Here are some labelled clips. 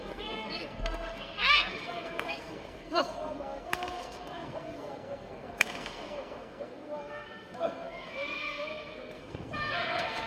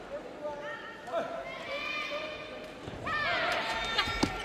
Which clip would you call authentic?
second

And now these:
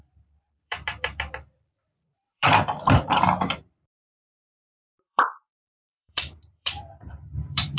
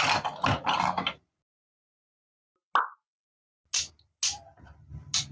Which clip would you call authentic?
second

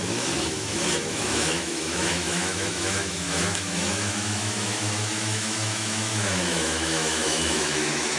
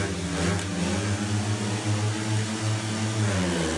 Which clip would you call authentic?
second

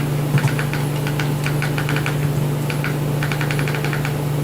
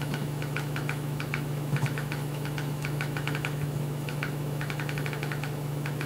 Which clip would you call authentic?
first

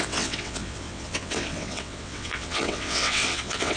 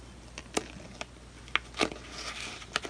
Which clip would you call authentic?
second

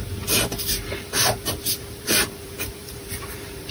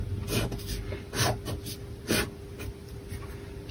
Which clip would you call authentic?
second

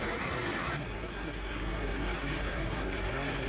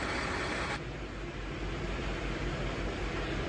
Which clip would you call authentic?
second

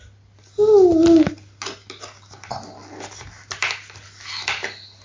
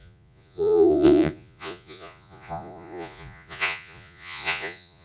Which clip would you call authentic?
first